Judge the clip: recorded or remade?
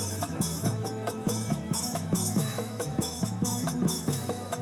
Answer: remade